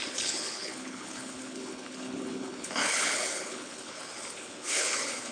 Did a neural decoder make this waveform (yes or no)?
yes